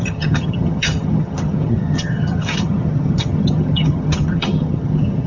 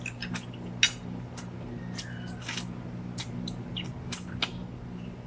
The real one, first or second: second